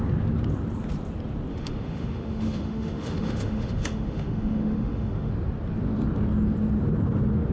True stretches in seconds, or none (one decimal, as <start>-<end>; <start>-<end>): 0.0-1.5; 5.3-7.5